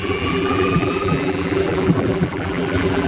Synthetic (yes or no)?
yes